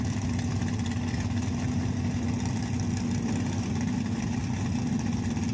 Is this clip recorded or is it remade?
recorded